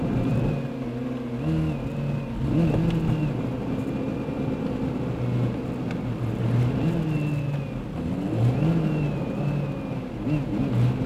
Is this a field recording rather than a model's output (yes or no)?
yes